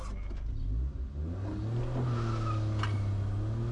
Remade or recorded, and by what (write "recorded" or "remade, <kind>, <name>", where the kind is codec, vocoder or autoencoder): recorded